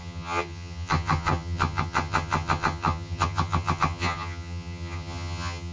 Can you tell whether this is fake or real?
fake